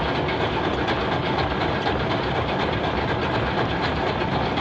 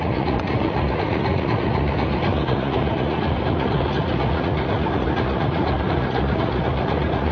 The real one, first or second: first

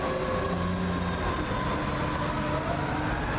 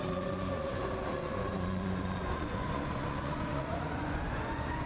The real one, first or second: first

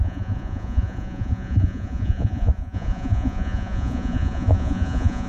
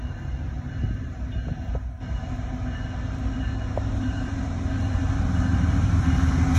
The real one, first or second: second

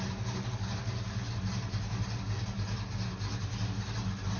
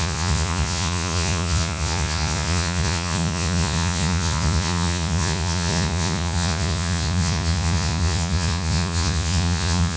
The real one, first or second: first